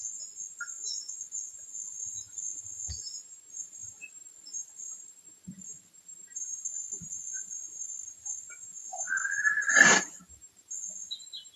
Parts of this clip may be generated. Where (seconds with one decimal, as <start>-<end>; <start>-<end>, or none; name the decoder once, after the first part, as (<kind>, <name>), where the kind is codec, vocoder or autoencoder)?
3.8-8.5 (vocoder, BigVGAN v2); 8.9-10.1